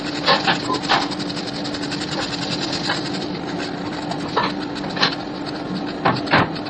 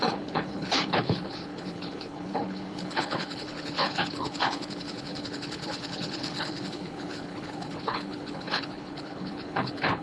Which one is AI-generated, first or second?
second